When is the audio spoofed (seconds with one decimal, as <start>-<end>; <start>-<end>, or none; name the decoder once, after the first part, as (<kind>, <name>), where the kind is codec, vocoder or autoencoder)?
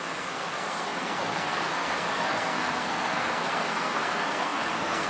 0.0-5.1 (codec, SNAC)